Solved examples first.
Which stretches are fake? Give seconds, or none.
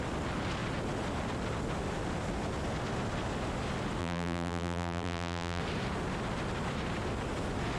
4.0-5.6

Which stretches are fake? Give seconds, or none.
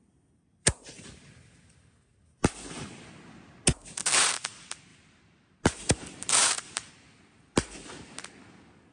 0.6-1.1; 3.7-4.3; 4.9-6.9